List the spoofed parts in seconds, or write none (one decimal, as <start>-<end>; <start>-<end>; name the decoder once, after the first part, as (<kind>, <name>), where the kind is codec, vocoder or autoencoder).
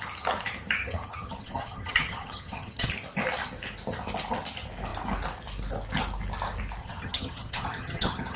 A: 0.8-2.9 (vocoder, HiFi-GAN); 6.8-8.4